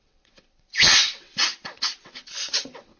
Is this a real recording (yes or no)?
no